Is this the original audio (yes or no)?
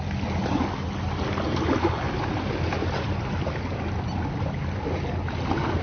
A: yes